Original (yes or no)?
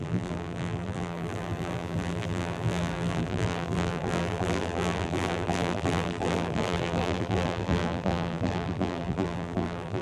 no